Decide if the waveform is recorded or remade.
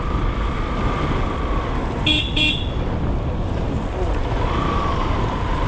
recorded